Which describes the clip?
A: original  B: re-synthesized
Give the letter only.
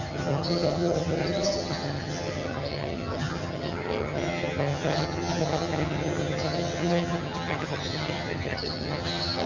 B